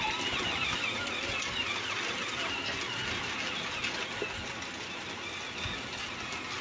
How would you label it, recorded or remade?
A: recorded